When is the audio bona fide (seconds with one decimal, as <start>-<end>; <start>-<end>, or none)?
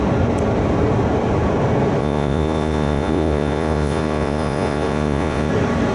0.0-2.0; 5.5-5.9